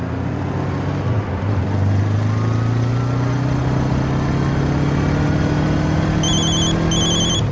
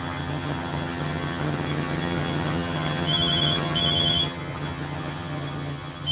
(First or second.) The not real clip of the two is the second